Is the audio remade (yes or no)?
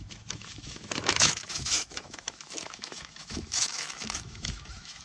yes